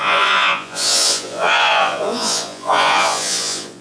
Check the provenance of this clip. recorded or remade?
remade